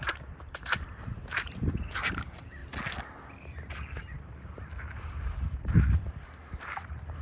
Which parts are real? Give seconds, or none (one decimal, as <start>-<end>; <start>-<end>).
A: 2.6-3.7